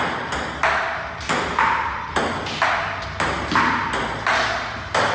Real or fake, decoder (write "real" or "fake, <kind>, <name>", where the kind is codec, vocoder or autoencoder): real